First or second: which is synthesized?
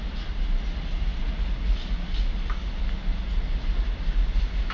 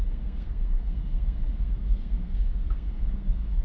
second